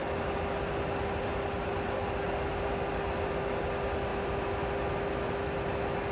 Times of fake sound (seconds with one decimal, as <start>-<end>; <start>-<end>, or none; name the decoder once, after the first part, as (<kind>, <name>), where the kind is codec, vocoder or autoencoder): none